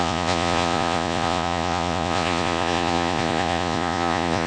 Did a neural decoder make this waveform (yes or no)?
yes